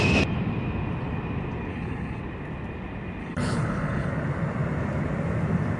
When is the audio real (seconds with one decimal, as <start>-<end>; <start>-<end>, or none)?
0.0-1.7; 2.2-3.2; 4.1-5.8